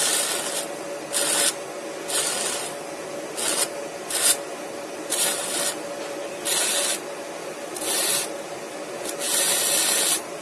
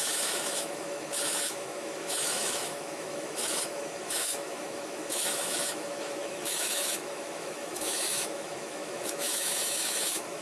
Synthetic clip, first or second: second